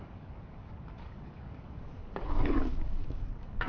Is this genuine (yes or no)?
no